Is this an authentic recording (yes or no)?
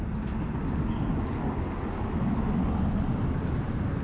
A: yes